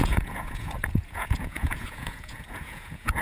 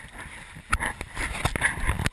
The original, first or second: second